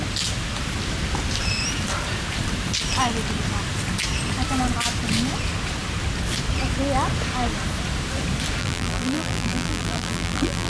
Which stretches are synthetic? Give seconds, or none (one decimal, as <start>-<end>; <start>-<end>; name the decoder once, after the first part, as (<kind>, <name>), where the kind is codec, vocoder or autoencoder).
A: 8.6-10.7 (vocoder, BigVGAN v2)